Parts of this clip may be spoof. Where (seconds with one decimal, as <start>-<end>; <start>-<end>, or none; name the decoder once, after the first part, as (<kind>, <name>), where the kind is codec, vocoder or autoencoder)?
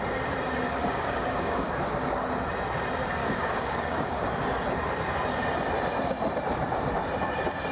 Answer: 0.8-1.7 (codec, DAC); 3.2-4.3